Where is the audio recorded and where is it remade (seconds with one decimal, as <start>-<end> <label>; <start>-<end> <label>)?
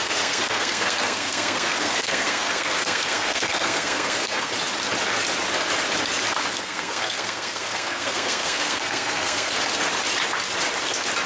0.0-4.5 remade; 4.5-6.6 recorded; 6.6-9.6 remade; 9.6-11.3 recorded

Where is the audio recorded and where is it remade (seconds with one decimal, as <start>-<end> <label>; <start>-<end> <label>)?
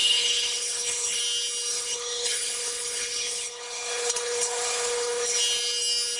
0.0-1.2 remade; 1.2-1.7 recorded; 1.7-5.4 remade; 5.4-6.2 recorded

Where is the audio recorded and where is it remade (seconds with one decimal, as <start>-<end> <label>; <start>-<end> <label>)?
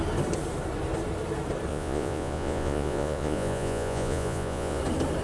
0.0-1.7 recorded; 1.7-4.8 remade; 4.8-5.2 recorded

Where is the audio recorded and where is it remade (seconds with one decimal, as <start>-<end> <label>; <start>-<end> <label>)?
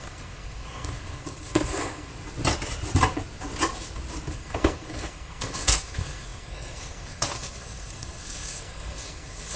0.0-2.1 remade; 2.1-4.3 recorded; 4.3-9.6 remade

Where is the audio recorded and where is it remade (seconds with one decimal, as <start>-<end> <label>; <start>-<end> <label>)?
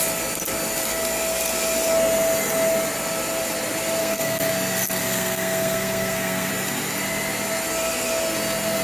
0.0-4.0 recorded; 4.0-4.5 remade; 4.5-5.0 recorded; 5.0-6.5 remade; 6.5-8.8 recorded